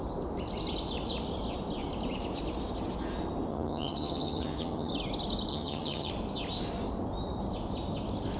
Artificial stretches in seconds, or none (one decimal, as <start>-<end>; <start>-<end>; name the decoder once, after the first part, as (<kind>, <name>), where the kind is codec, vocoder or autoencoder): 3.5-4.9 (vocoder, HiFi-GAN); 5.5-6.1